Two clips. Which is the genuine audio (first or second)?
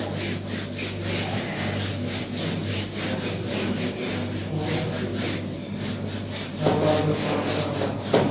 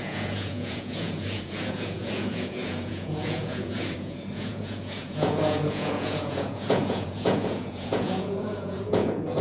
first